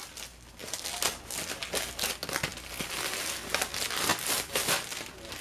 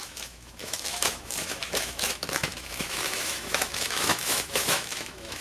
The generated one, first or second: second